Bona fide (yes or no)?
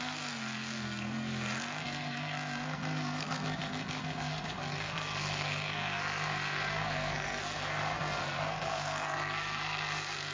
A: no